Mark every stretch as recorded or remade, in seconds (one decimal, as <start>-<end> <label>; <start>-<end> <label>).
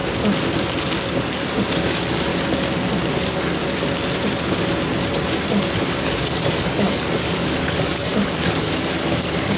0.0-1.1 recorded; 1.1-2.3 remade; 2.3-3.1 recorded; 3.1-3.6 remade; 3.6-5.8 recorded; 5.8-9.6 remade